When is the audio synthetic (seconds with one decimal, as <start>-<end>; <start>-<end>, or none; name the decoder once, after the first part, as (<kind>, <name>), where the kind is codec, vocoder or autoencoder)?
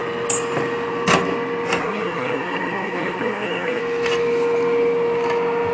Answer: 1.8-3.8 (codec, SNAC)